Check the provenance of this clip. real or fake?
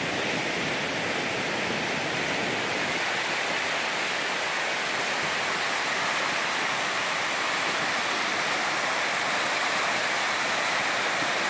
real